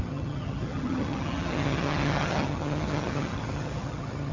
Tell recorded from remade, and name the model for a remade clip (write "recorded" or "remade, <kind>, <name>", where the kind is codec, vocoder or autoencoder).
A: remade, vocoder, HiFi-GAN